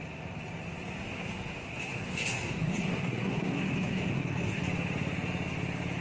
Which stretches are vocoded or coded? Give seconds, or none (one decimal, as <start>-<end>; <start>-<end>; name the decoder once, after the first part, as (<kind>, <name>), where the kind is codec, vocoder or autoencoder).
1.0-4.6 (codec, SNAC)